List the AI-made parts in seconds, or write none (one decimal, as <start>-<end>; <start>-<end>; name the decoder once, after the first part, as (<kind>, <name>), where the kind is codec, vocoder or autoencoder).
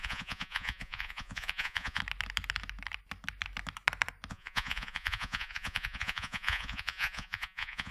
0.0-2.0 (vocoder, Vocos); 4.3-7.9